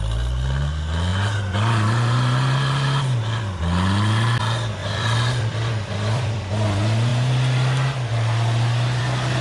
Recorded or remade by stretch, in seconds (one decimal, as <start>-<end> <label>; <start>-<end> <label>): 0.0-4.8 recorded; 4.8-6.5 remade; 6.5-9.4 recorded